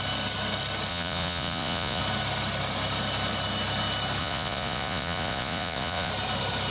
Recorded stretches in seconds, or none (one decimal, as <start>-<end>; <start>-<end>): 0.0-0.9; 2.0-4.2; 6.1-6.7

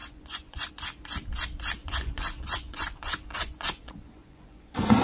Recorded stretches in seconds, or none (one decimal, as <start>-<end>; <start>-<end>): 0.7-1.8

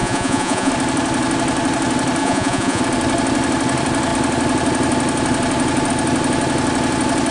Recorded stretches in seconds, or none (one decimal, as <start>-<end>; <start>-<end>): 0.7-2.2; 2.8-7.3

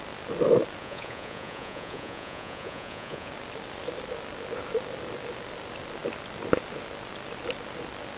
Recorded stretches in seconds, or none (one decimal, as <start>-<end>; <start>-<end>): 0.0-0.8; 3.3-8.2

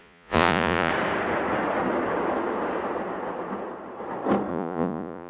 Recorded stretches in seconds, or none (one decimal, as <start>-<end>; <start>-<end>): 0.9-4.5

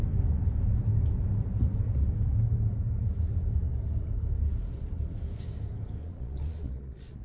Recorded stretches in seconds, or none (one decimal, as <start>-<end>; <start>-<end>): 0.0-6.0

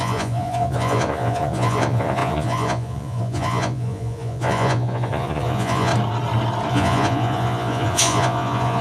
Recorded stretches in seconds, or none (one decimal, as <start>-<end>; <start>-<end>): 5.9-6.7